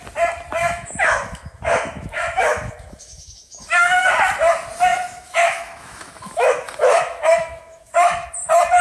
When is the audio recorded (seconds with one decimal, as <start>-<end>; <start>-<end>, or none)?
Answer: 0.0-0.6; 4.0-4.9; 8.3-8.8